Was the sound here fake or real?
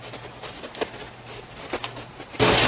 real